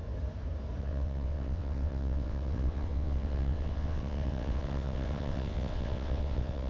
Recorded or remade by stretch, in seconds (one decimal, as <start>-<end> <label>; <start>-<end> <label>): 0.0-0.8 recorded; 0.8-6.7 remade